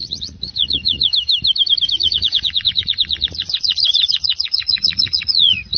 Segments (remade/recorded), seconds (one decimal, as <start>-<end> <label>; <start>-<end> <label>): 0.0-1.1 remade; 1.1-2.0 recorded; 2.0-5.8 remade